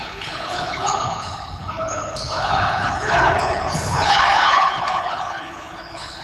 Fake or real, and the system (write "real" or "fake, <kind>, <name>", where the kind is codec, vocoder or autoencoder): fake, codec, HILCodec